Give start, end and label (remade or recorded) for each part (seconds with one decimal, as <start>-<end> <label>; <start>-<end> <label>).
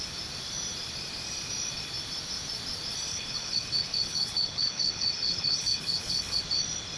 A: 0.0-3.1 recorded; 3.1-6.4 remade; 6.4-7.0 recorded